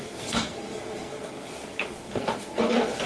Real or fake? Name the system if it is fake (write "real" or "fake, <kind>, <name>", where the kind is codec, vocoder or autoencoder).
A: fake, codec, SNAC